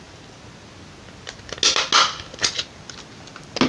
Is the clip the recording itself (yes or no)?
yes